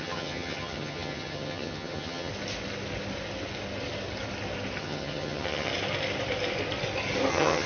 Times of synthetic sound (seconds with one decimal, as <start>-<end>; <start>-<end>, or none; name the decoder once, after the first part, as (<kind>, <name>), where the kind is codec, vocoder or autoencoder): 0.0-2.3 (vocoder, HiFi-GAN); 4.8-5.7; 7.3-7.7